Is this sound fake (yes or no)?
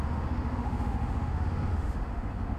yes